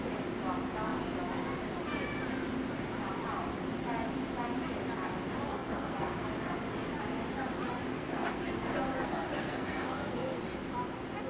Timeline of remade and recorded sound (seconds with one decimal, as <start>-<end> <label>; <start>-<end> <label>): 0.0-5.5 recorded; 5.5-6.3 remade; 6.3-7.9 recorded; 7.9-10.4 remade; 10.4-11.3 recorded